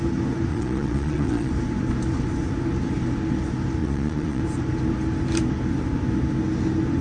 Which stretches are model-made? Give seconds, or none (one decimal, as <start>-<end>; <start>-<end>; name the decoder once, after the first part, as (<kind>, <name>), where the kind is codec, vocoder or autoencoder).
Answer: 0.5-1.5 (vocoder, Vocos); 3.8-4.4